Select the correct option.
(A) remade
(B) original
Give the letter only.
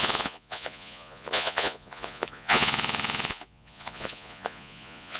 A